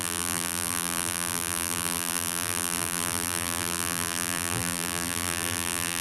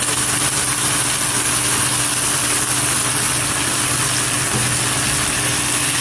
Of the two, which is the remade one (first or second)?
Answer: first